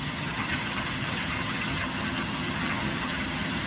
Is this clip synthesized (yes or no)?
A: yes